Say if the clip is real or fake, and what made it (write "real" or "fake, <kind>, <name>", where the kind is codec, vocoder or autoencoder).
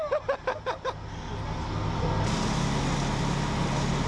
real